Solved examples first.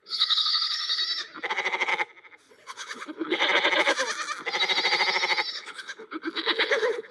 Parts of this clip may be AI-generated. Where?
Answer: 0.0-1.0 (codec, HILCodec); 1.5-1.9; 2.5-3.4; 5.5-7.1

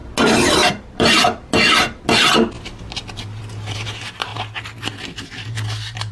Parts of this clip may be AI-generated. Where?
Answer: none

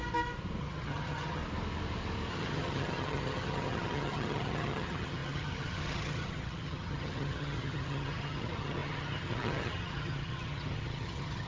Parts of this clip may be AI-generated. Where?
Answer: 0.6-1.4 (vocoder, HiFi-GAN); 2.3-11.5